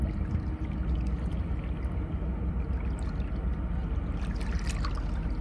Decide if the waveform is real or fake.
real